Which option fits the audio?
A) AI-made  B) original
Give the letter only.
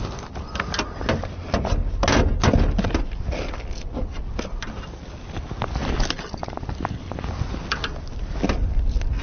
B